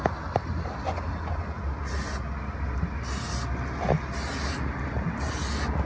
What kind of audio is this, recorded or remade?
recorded